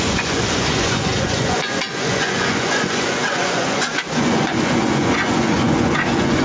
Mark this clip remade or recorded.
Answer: remade